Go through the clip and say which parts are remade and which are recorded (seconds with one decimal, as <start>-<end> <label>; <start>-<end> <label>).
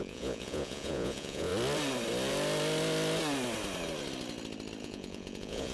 0.0-1.5 remade; 1.5-4.8 recorded; 4.8-5.7 remade